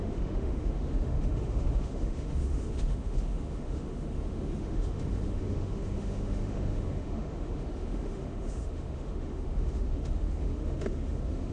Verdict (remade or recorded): remade